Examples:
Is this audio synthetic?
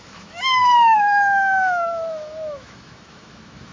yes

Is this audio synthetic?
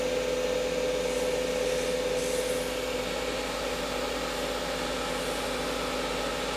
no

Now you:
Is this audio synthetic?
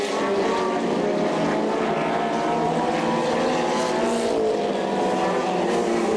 no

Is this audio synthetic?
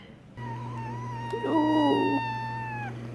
no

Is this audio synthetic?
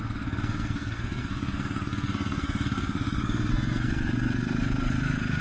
yes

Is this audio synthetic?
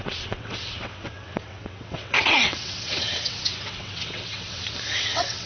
yes